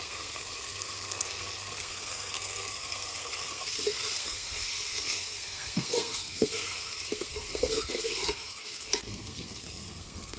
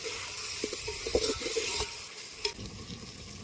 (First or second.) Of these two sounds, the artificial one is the first